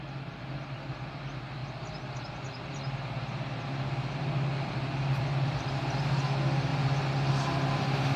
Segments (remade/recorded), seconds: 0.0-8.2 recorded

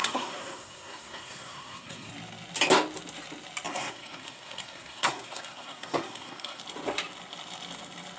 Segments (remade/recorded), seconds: 0.0-2.1 remade; 2.1-3.7 recorded; 3.7-6.6 remade; 6.6-8.2 recorded

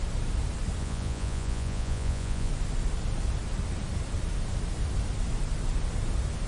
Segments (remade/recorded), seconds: 0.0-0.8 recorded; 0.8-2.5 remade; 2.5-6.5 recorded

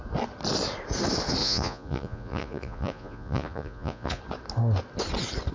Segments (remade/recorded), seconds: 0.0-1.4 recorded; 1.4-4.2 remade; 4.2-5.5 recorded

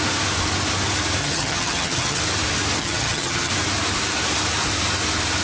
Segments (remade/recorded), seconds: 0.0-1.2 recorded; 1.2-2.2 remade; 2.2-2.8 recorded; 2.8-3.5 remade; 3.5-5.4 recorded

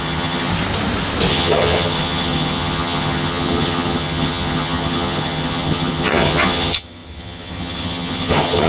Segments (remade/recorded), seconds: 0.0-0.5 remade; 0.5-1.3 recorded; 1.3-8.7 remade

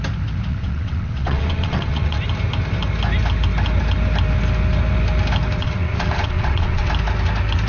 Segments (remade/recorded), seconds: 0.0-0.5 recorded; 0.5-2.2 remade; 2.2-5.6 recorded; 5.6-6.9 remade; 6.9-7.7 recorded

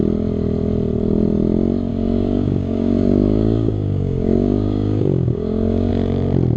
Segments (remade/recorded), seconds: 0.0-1.9 recorded; 1.9-5.9 remade; 5.9-6.6 recorded